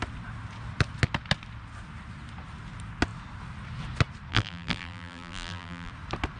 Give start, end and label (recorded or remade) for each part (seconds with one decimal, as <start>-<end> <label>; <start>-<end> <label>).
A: 0.0-4.3 recorded; 4.3-5.9 remade; 5.9-6.4 recorded